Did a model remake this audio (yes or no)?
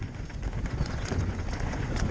yes